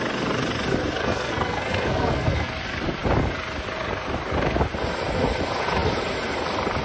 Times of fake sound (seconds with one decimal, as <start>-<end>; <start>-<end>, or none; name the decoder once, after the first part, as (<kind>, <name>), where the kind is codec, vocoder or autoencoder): 1.0-2.5 (codec, SNAC)